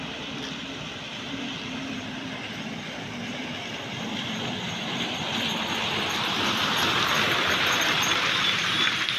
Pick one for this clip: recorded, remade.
remade